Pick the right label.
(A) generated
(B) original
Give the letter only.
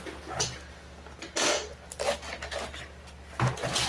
B